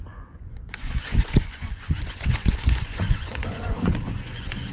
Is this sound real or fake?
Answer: fake